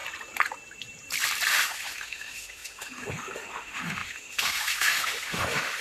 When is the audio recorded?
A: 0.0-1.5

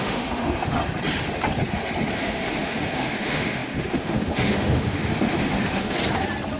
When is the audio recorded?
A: 0.8-2.2; 6.0-6.6